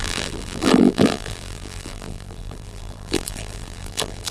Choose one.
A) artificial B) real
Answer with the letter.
A